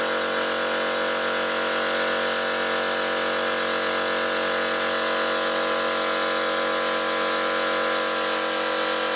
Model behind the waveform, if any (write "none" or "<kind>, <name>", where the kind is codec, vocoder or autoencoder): none